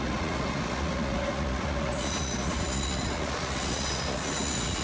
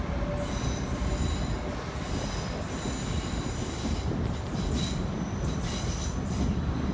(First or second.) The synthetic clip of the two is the first